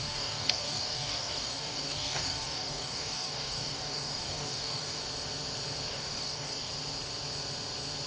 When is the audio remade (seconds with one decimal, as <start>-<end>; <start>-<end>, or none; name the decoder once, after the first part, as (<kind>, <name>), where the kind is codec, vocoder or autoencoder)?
0.0-5.0 (codec, DAC); 5.9-6.7